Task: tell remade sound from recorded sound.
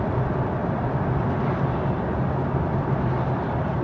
remade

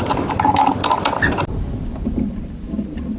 recorded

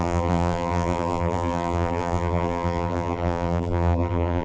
remade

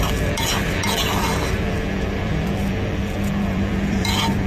remade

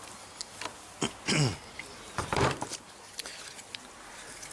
recorded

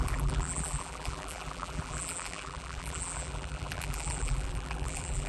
remade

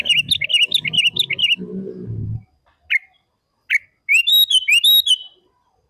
recorded